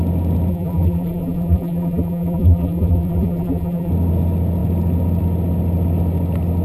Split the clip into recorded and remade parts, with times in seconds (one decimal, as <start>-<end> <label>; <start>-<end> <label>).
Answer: 0.0-0.5 recorded; 0.5-3.9 remade; 3.9-6.6 recorded